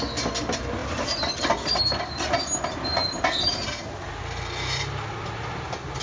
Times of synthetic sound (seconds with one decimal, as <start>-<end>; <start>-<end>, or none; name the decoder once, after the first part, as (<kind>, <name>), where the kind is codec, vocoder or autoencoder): none

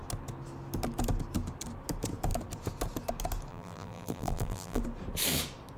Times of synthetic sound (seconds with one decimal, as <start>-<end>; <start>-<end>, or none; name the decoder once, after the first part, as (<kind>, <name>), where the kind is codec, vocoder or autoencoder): 3.5-4.8 (vocoder, BigVGAN v2)

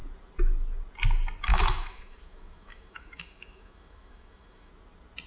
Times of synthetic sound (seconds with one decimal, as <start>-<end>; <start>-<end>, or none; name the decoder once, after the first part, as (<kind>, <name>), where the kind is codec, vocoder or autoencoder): 1.5-4.7 (autoencoder, DAC-VAE)

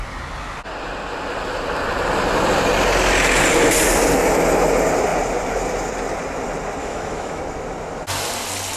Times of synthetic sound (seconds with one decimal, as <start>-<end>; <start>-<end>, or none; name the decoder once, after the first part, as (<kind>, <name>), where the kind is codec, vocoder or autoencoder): 6.8-7.4 (autoencoder, DAC-VAE)